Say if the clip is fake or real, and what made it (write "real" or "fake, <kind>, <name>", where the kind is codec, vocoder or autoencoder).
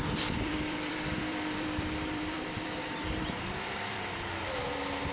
fake, vocoder, BigVGAN v2